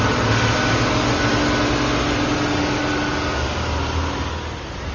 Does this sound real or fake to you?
real